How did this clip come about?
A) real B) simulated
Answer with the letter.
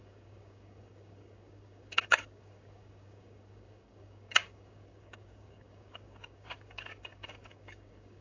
B